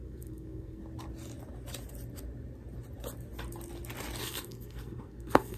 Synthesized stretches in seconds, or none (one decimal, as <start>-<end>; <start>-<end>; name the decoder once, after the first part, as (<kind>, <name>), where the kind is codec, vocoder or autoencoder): 0.0-0.8 (codec, SNAC); 4.2-5.6

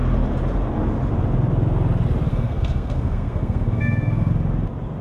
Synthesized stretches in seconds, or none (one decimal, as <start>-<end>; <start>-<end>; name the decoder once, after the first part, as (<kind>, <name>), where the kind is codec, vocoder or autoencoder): 2.3-4.3 (codec, SNAC)

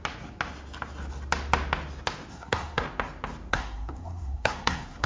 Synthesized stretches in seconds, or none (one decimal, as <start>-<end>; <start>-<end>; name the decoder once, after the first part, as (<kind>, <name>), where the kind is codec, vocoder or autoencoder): 2.3-2.8 (codec, SNAC); 3.5-5.1

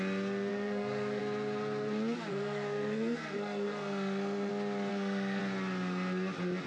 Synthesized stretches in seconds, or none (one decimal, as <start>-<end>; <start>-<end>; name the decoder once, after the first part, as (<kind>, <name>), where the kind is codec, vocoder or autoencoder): 0.5-1.2 (codec, SNAC); 2.3-4.5; 4.9-5.4

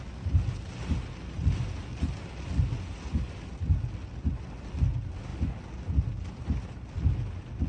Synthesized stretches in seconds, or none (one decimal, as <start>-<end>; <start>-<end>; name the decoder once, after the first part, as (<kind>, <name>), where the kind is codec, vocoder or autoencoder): none

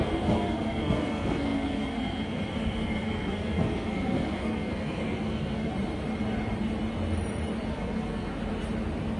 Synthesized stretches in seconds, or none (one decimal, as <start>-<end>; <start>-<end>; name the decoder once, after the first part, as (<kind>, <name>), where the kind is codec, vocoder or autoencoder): 0.0-5.7 (codec, SNAC); 7.7-8.3